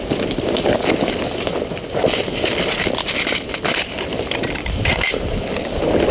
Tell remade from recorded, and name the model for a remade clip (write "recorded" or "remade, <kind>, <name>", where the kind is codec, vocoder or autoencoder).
recorded